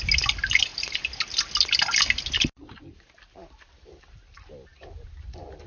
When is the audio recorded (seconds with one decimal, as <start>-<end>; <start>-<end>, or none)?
0.0-5.7